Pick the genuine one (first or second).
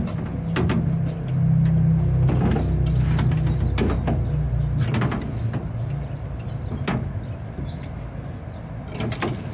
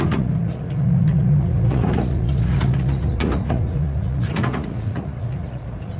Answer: first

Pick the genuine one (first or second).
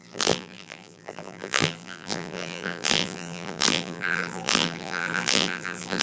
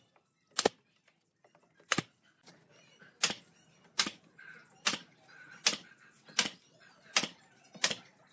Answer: second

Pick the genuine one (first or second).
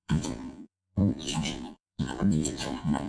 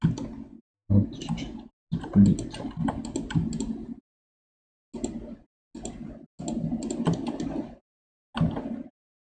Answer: second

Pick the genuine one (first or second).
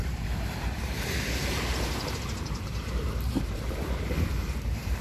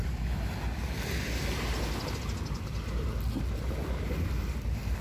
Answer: second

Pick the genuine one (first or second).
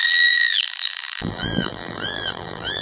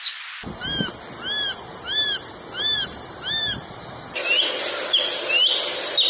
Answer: second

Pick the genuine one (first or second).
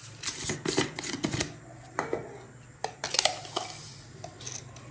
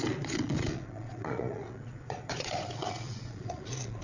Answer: first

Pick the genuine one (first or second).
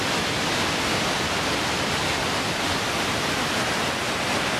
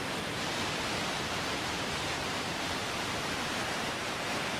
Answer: first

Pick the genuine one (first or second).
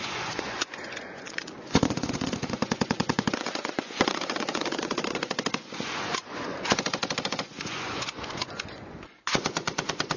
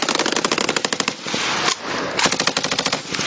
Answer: second